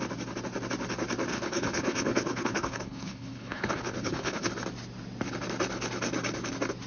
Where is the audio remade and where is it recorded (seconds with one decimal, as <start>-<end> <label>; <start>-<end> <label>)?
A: 0.0-1.3 recorded; 1.3-4.5 remade; 4.5-6.9 recorded